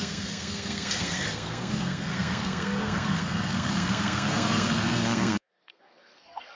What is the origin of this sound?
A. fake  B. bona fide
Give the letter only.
A